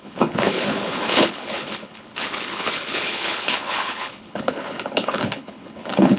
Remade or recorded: remade